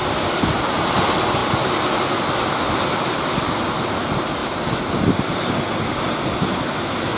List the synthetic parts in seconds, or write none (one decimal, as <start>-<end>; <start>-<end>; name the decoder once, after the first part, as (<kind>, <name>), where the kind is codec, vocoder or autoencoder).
none